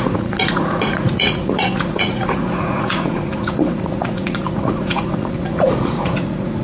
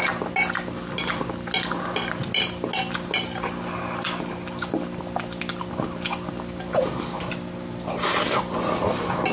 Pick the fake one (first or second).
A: first